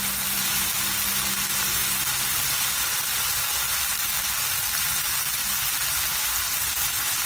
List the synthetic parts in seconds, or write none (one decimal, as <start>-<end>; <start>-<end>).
none